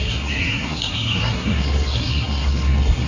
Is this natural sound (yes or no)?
no